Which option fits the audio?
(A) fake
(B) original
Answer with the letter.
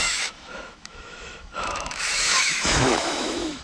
A